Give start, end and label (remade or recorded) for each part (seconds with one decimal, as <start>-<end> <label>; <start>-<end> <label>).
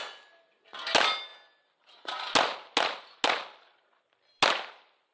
0.0-5.1 recorded